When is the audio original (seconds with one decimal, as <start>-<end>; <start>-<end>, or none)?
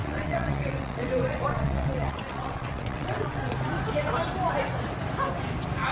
3.5-5.9